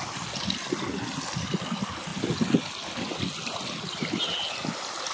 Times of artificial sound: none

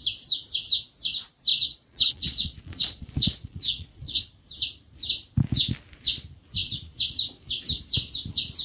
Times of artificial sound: 1.5-4.2 (vocoder, Vocos)

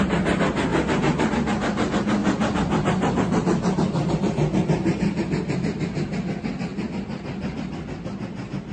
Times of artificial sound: 2.2-4.1 (vocoder, BigVGAN v2); 6.7-7.6

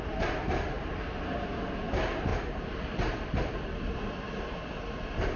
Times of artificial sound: none

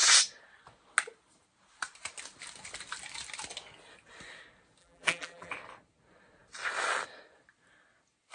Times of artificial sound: 4.8-5.5 (vocoder, BigVGAN v2)

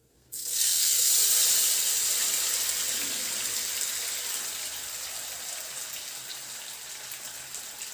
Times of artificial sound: 0.0-1.1 (codec, SNAC)